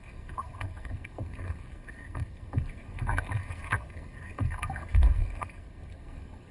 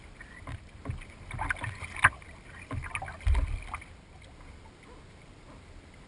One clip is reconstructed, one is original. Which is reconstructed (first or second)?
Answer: first